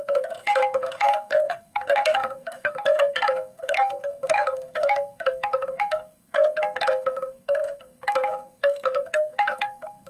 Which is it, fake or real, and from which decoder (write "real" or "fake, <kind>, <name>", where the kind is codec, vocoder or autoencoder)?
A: fake, codec, SNAC